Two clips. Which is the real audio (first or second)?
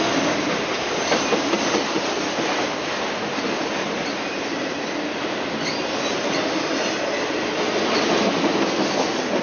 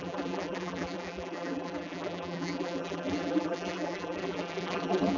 first